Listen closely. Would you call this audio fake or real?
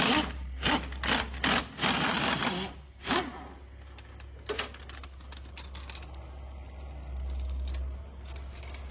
real